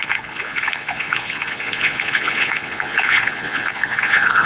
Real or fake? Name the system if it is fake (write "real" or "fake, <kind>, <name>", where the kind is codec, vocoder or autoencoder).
fake, vocoder, Vocos